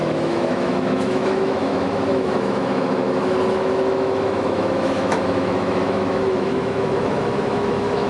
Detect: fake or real fake